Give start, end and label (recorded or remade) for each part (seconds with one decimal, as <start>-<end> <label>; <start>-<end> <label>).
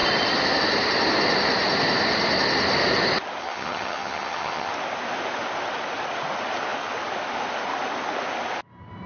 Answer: 0.0-3.4 recorded; 3.4-4.7 remade; 4.7-9.1 recorded